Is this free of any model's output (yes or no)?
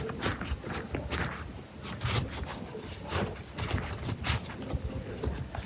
yes